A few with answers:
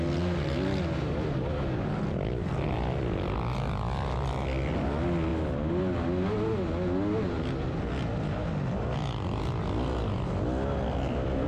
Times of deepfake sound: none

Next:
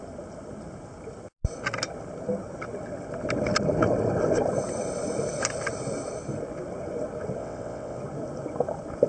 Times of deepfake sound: 7.4-8.0 (vocoder, WaveNeXt)

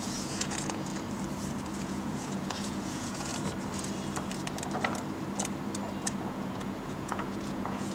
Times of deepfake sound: 0.0-0.9 (vocoder, Vocos); 1.8-3.3; 6.2-7.9

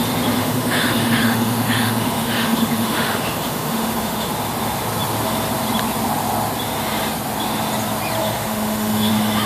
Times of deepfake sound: 0.4-4.3 (autoencoder, DAC-VAE); 8.2-9.1

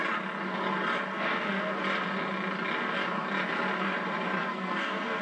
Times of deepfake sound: 1.1-1.6 (codec, SNAC); 4.4-5.2